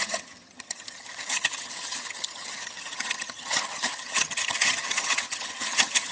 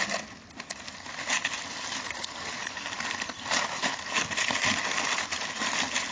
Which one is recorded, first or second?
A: second